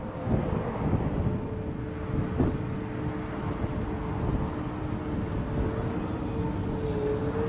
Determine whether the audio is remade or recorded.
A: recorded